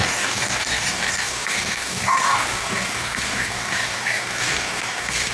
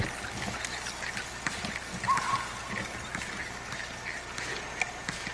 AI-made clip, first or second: first